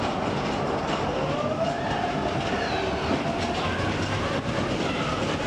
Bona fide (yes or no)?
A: yes